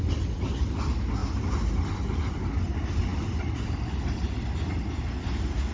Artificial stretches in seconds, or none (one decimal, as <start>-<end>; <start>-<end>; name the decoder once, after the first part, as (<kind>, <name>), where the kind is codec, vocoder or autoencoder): none